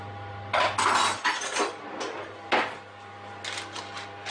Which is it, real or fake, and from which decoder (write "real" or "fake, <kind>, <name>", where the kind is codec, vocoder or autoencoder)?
real